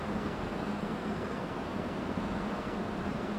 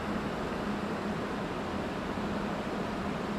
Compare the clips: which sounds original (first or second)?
second